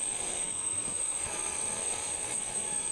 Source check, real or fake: fake